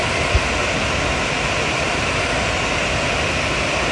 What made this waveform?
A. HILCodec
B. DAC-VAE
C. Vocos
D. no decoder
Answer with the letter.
D